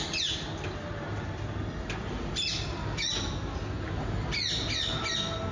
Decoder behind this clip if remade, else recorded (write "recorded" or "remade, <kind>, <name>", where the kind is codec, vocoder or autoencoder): recorded